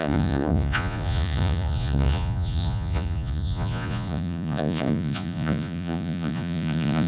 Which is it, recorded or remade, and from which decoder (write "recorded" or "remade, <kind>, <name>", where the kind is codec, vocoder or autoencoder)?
remade, vocoder, Vocos